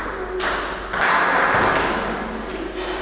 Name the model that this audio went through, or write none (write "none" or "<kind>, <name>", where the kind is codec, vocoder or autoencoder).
none